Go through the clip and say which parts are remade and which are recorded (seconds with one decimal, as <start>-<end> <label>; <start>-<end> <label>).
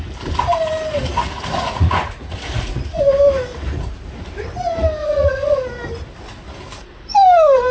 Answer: 0.0-1.3 recorded; 1.3-3.0 remade; 3.0-5.0 recorded; 5.0-5.6 remade; 5.6-7.7 recorded